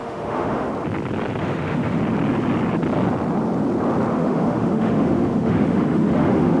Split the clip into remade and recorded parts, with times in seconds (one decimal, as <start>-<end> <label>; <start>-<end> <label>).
0.0-0.7 remade; 0.7-1.4 recorded; 1.4-2.0 remade; 2.0-4.1 recorded; 4.1-6.6 remade